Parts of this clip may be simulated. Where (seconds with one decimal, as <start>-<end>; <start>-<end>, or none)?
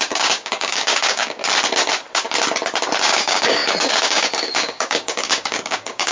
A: 0.0-1.4; 3.0-6.1